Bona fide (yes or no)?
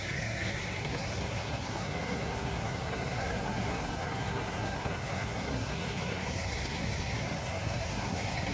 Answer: no